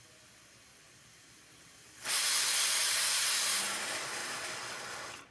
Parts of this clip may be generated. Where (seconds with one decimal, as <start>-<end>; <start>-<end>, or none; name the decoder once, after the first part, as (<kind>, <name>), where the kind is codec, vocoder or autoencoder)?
none